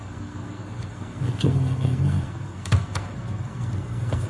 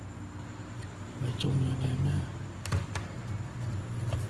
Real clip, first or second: second